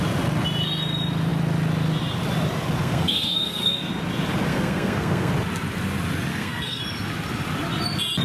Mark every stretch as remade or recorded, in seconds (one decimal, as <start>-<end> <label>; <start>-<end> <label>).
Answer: 0.0-2.8 recorded; 2.8-3.9 remade; 3.9-4.5 recorded; 4.5-5.3 remade; 5.3-6.3 recorded; 6.3-6.8 remade; 6.8-8.2 recorded